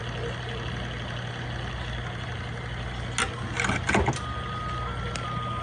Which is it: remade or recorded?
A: recorded